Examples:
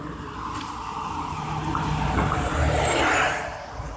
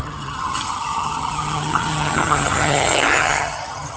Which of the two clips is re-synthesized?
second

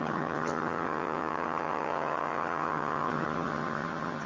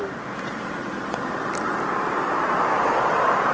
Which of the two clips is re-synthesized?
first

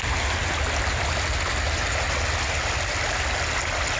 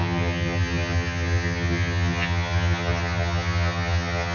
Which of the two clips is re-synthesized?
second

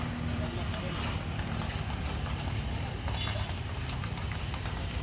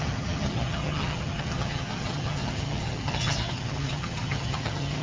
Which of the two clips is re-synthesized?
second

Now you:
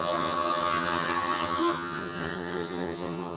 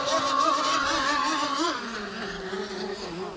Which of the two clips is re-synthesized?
first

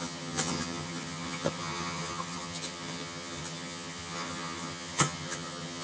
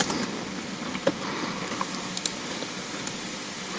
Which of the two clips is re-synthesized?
first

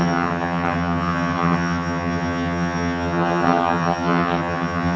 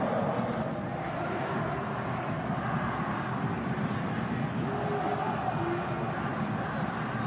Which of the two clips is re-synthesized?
first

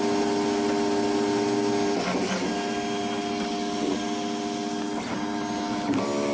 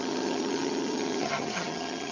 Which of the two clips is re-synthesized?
second